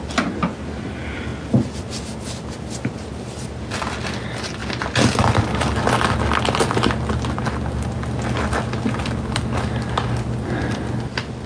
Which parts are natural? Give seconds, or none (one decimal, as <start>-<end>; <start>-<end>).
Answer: 0.0-11.5